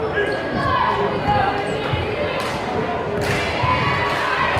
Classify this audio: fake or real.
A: real